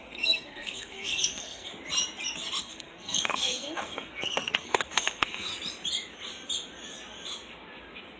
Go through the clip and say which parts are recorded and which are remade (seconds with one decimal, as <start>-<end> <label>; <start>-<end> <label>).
0.0-1.7 remade; 1.7-2.6 recorded; 2.6-5.5 remade; 5.5-8.2 recorded